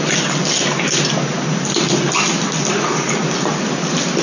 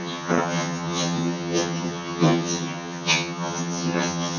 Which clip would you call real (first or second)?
first